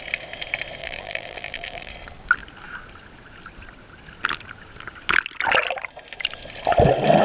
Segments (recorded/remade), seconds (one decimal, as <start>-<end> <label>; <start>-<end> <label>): 0.0-0.8 recorded; 0.8-1.9 remade; 1.9-7.2 recorded